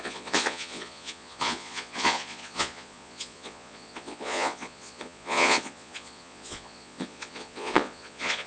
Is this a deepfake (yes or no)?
yes